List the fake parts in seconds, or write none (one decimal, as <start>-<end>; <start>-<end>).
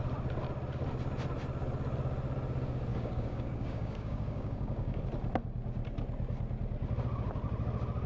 2.9-5.0